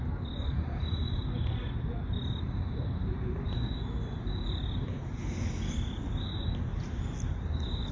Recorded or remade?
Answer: recorded